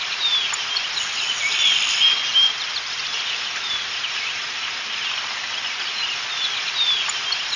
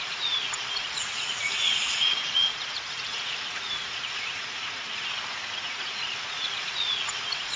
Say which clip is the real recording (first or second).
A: first